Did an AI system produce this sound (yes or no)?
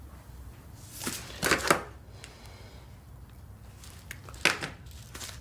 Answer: no